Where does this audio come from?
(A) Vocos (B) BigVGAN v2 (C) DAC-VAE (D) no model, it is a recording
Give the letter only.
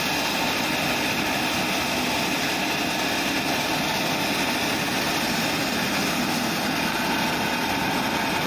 D